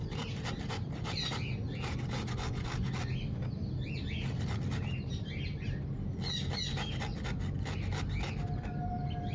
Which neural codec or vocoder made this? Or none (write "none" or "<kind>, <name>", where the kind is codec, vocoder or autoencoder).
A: none